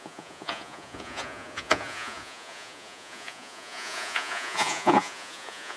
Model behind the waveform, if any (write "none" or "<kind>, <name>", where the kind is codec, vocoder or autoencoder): vocoder, Vocos